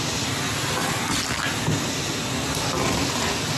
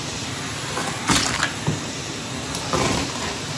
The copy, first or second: second